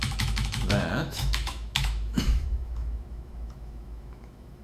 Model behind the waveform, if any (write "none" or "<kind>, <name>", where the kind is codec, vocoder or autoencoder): autoencoder, DAC-VAE